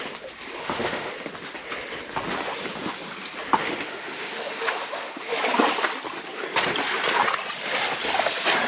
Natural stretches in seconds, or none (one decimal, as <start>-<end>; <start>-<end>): 0.0-0.6; 1.1-3.6; 5.4-8.7

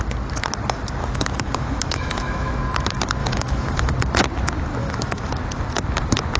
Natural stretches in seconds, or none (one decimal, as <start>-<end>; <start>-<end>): 0.0-1.0; 2.5-3.2; 3.9-4.8; 5.3-6.4

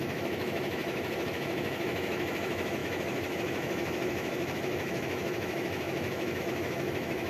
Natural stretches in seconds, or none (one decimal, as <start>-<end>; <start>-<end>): none

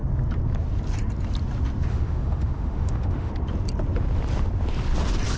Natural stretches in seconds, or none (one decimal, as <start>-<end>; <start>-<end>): 0.0-1.9; 3.3-5.4

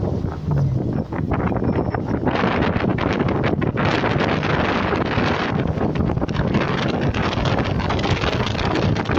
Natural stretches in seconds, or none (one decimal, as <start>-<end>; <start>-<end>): 0.0-9.2

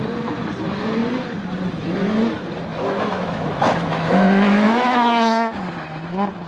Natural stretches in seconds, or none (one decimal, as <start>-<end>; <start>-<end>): 0.0-2.7; 5.6-6.5

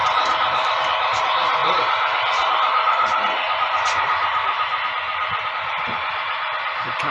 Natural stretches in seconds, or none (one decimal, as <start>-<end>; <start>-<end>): 0.0-7.1